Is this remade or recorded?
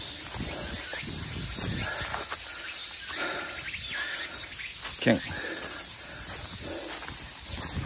recorded